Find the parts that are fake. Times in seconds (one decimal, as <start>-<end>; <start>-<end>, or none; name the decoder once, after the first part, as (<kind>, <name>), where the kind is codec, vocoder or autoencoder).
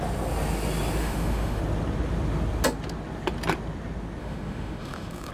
1.0-1.6 (autoencoder, DAC-VAE); 4.2-5.3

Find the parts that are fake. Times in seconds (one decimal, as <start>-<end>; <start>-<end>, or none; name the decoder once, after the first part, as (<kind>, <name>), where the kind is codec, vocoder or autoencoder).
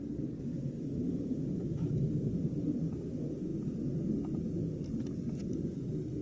1.4-2.8 (vocoder, BigVGAN v2)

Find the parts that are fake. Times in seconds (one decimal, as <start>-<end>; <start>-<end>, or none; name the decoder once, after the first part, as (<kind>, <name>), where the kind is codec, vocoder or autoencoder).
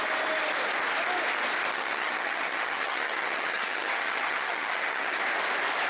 1.7-5.2 (vocoder, HiFi-GAN)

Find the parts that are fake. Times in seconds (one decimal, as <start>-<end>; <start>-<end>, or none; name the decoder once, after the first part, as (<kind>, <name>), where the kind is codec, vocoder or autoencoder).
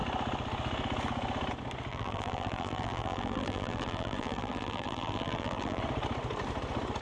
1.9-5.8 (vocoder, BigVGAN v2)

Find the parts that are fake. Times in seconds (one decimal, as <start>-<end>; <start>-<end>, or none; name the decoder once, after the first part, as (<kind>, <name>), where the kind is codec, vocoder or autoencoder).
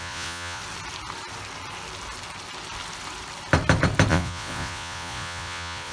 0.0-0.6 (vocoder, Vocos); 4.1-5.9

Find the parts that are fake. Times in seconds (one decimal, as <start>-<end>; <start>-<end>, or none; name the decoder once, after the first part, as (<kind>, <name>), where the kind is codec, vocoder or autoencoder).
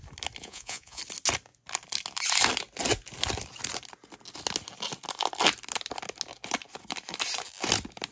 0.4-1.0 (vocoder, Vocos)